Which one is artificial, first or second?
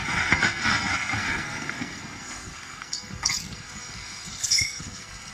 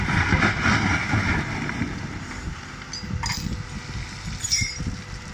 first